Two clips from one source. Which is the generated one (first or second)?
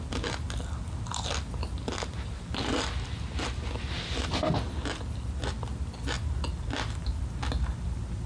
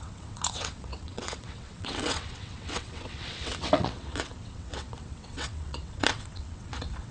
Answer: second